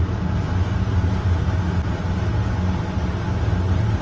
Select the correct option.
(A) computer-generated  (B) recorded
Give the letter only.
B